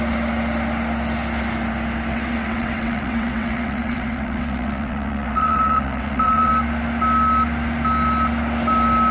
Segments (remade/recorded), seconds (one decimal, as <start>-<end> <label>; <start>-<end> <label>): 0.0-2.1 recorded; 2.1-6.5 remade; 6.5-9.1 recorded